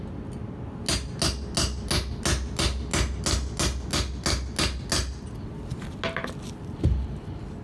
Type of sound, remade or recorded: recorded